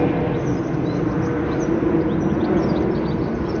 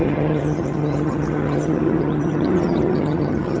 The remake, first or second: second